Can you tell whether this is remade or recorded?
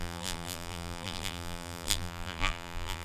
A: remade